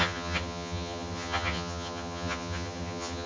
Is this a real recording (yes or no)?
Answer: no